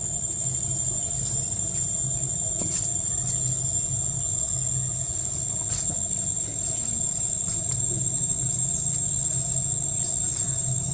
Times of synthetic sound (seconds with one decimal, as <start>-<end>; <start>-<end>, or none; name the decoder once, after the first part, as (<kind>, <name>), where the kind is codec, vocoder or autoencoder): none